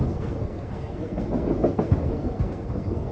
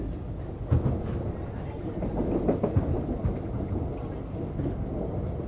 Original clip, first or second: second